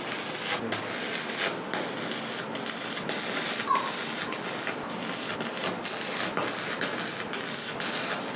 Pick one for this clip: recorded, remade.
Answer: recorded